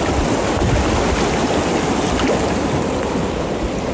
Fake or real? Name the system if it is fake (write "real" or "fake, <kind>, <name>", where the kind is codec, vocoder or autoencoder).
real